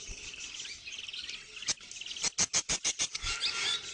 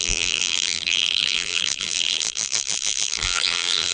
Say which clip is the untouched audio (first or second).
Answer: first